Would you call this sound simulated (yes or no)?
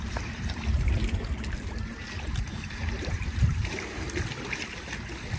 yes